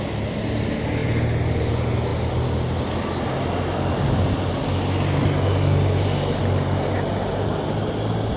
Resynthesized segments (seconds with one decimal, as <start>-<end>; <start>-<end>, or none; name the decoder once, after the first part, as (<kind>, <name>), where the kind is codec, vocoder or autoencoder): none